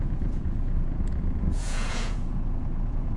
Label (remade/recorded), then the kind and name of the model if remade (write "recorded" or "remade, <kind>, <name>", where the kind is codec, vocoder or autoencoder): remade, vocoder, Vocos